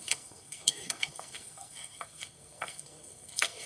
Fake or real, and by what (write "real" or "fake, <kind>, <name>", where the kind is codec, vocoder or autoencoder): fake, codec, SNAC